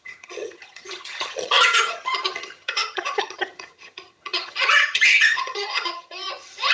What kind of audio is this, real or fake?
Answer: fake